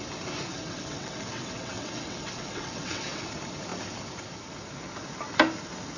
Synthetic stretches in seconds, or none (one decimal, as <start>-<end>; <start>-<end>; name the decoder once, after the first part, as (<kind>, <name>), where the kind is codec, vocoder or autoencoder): 0.5-3.2 (vocoder, WaveNeXt)